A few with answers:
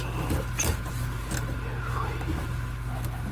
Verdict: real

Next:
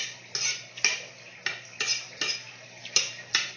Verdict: real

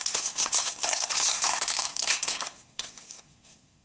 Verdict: fake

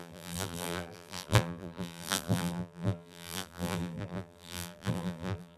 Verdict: fake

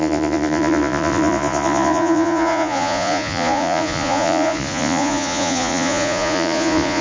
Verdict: fake